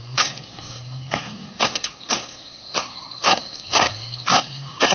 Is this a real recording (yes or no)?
no